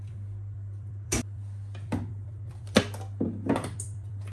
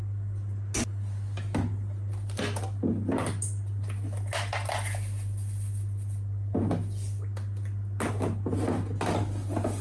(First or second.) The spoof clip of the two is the first